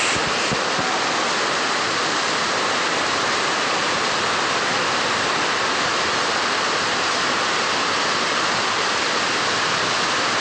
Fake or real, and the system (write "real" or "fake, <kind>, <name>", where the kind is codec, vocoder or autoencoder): real